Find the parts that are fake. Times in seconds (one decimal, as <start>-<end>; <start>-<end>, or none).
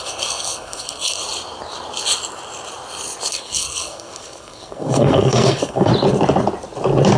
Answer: 0.0-1.2; 3.3-5.9